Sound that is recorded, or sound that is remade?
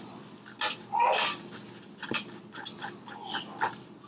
recorded